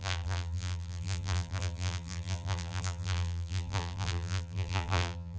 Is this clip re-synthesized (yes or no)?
yes